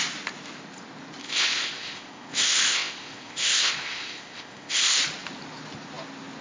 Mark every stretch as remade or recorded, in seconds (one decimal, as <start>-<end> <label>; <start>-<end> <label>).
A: 0.0-1.2 recorded; 1.2-5.0 remade; 5.0-6.4 recorded